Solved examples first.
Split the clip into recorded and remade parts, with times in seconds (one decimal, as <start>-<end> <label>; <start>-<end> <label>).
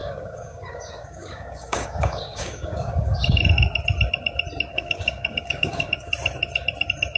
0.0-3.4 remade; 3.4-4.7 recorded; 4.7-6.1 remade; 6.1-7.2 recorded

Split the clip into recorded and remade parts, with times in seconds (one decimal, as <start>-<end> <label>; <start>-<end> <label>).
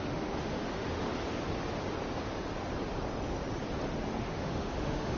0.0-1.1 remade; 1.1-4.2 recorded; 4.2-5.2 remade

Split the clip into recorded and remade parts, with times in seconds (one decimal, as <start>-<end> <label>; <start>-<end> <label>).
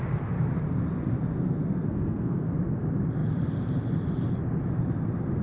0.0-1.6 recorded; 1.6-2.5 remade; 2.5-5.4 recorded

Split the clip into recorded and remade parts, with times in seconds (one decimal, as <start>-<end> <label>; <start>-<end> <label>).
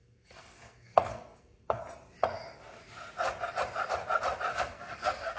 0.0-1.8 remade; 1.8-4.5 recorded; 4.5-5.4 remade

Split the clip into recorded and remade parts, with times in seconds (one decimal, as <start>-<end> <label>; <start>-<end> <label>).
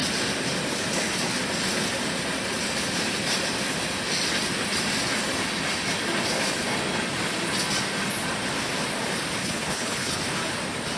0.0-9.4 recorded; 9.4-10.2 remade; 10.2-11.0 recorded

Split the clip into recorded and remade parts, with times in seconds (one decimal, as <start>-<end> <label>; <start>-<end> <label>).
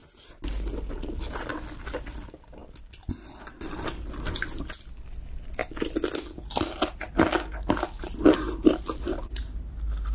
0.0-10.1 recorded